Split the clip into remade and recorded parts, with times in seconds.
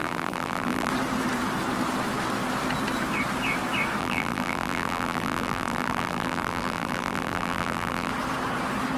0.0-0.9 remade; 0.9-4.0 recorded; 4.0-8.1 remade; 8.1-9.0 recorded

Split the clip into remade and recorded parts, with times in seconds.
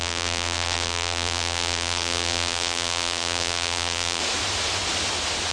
0.0-4.2 remade; 4.2-5.5 recorded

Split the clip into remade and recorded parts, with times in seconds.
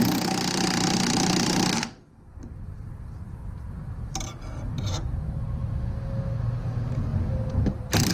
0.0-7.1 recorded; 7.1-8.1 remade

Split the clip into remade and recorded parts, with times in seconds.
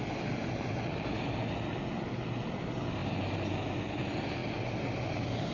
0.0-5.5 recorded